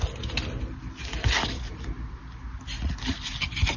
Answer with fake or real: real